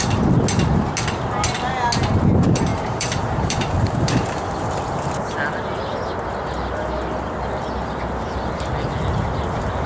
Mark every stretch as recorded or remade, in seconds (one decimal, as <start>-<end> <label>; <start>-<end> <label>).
0.0-2.7 recorded; 2.7-4.1 remade; 4.1-9.9 recorded